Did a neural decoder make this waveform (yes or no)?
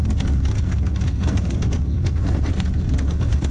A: yes